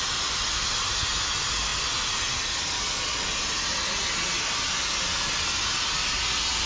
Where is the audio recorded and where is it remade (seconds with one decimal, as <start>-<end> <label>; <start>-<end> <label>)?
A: 0.0-6.7 recorded